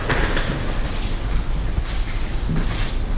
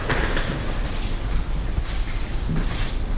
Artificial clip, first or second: second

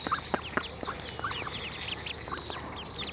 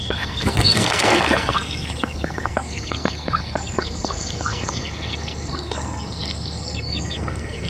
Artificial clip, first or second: second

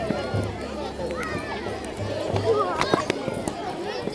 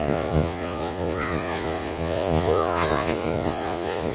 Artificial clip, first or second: second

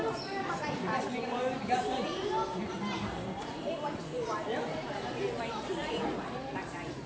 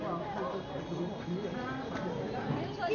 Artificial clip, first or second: first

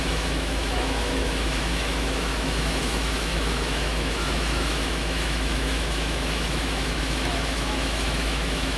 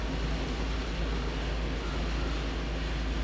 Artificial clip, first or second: first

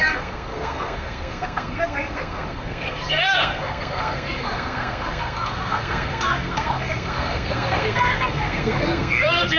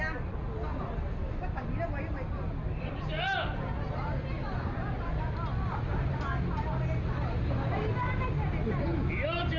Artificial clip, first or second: first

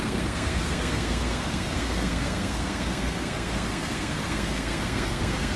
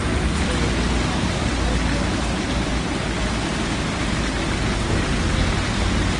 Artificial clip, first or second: first